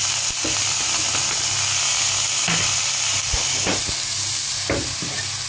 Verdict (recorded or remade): recorded